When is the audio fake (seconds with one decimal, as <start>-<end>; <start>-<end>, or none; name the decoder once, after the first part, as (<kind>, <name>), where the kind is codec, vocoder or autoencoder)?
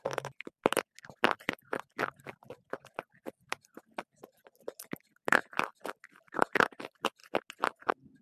none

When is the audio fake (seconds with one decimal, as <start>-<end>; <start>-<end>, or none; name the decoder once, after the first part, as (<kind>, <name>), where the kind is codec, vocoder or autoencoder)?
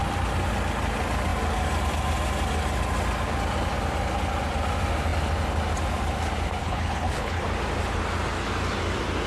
6.6-7.4 (codec, HILCodec)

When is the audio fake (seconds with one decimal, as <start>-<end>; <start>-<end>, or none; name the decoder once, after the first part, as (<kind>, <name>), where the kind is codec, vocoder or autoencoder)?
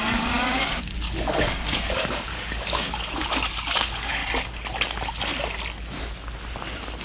0.0-4.2 (codec, DAC)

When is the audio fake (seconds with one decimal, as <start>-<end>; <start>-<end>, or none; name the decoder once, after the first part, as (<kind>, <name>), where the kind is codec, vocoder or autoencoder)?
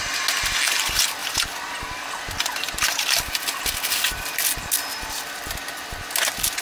none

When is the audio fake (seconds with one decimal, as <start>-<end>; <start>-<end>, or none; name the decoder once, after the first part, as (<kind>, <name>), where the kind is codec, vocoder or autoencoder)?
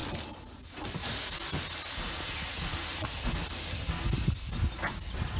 none